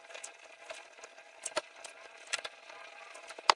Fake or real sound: fake